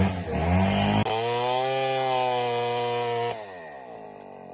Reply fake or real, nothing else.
real